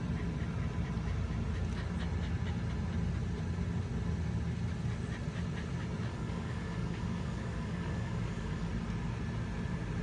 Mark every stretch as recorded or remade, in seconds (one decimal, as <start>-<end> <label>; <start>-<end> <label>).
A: 0.0-6.1 recorded; 6.1-8.7 remade; 8.7-10.0 recorded